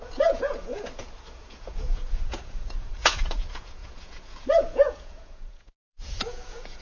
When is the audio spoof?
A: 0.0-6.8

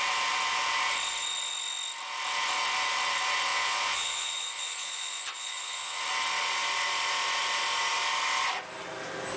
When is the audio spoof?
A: 3.5-6.0

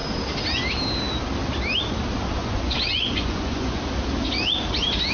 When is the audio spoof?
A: 2.4-3.8

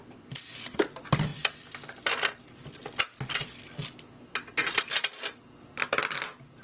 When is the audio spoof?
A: none

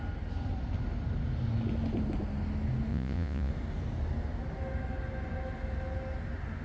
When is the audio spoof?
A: 2.9-3.5

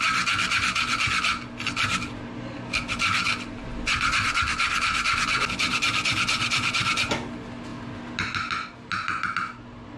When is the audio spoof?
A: none

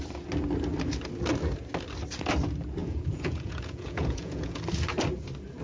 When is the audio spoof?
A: 2.8-4.6

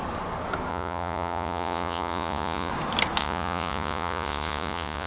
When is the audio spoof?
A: 0.7-2.7; 3.2-5.1